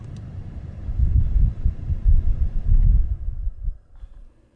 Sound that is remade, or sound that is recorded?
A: remade